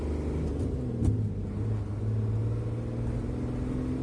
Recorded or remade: recorded